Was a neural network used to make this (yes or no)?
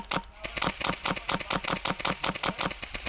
no